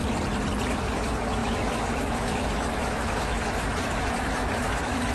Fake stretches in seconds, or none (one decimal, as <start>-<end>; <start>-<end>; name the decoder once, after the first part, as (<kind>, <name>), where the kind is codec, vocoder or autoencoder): 0.7-5.1 (autoencoder, DAC-VAE)